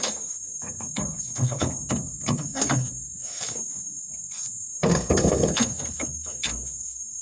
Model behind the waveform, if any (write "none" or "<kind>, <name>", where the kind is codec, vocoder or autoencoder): codec, SNAC